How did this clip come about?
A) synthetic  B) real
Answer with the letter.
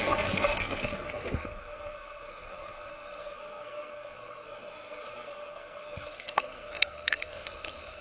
A